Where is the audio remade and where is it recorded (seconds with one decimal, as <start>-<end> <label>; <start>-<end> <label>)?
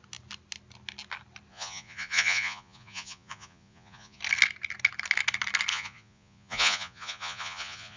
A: 0.0-1.5 recorded; 1.5-4.2 remade; 4.2-5.7 recorded; 5.7-8.0 remade